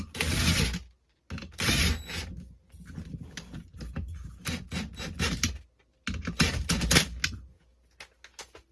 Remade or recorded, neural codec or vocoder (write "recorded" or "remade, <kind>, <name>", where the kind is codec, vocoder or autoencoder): recorded